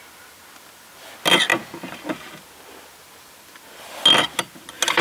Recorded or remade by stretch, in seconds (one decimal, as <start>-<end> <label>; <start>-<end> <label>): 0.0-5.0 recorded